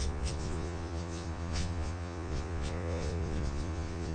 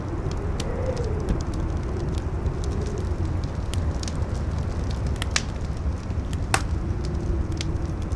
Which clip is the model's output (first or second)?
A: first